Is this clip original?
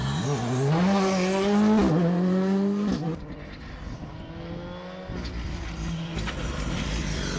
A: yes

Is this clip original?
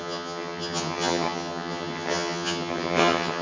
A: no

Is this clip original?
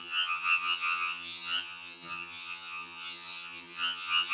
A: no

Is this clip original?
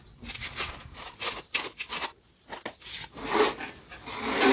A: yes